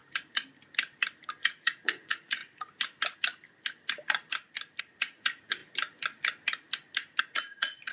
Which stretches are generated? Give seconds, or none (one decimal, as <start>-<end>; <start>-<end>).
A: 1.4-2.4; 4.8-5.6; 7.2-7.9